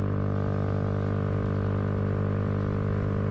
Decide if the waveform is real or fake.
real